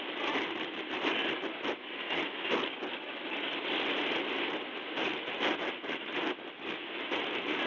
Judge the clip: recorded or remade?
recorded